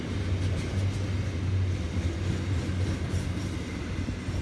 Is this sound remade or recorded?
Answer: recorded